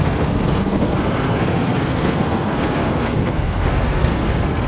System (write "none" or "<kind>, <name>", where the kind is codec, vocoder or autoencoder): codec, SNAC